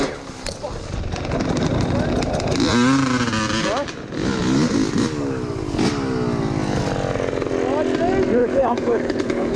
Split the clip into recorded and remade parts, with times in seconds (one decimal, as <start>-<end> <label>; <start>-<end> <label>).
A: 0.0-8.4 recorded; 8.4-9.6 remade

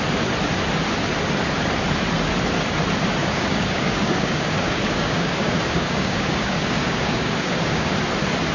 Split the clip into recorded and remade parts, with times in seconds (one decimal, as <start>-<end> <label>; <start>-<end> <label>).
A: 0.0-3.2 recorded; 3.2-7.9 remade; 7.9-8.5 recorded

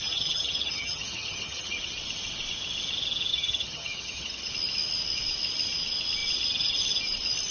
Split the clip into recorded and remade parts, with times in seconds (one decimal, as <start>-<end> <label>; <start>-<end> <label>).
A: 0.0-1.8 remade; 1.8-3.3 recorded; 3.3-4.5 remade; 4.5-7.5 recorded